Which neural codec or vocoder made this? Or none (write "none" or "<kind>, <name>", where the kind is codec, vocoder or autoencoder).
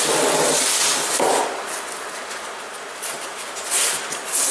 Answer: none